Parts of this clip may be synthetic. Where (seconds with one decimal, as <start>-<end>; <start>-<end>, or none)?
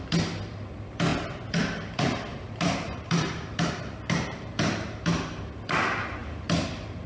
2.3-5.5